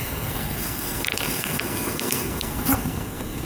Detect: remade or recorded remade